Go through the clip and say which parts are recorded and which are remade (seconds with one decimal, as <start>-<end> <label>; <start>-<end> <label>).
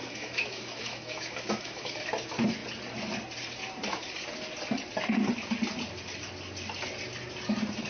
0.0-2.1 remade; 2.1-7.9 recorded